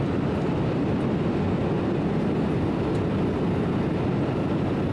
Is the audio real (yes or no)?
yes